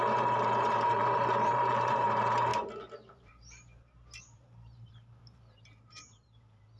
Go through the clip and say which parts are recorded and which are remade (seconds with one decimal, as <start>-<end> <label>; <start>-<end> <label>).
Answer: 0.0-2.5 remade; 2.5-3.1 recorded; 3.1-6.8 remade